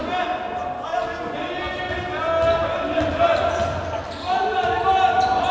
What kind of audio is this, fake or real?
real